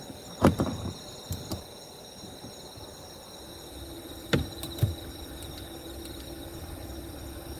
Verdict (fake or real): real